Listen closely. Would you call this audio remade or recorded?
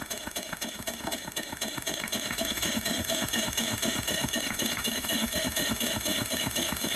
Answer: remade